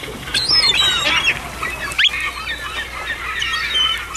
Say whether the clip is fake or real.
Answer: real